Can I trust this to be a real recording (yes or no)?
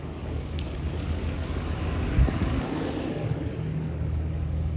no